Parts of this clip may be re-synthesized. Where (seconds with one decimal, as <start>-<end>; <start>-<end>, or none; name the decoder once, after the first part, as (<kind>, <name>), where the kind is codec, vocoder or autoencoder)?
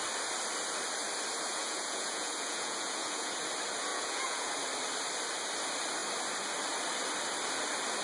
1.5-3.3 (vocoder, Vocos); 3.9-4.5